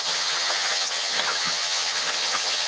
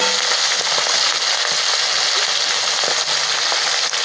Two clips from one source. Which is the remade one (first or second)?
first